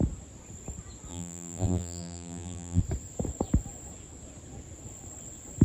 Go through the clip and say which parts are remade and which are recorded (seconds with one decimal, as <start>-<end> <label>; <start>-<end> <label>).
0.0-1.1 recorded; 1.1-2.8 remade; 2.8-5.6 recorded